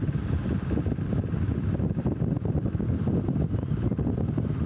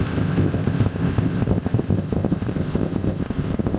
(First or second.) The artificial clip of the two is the second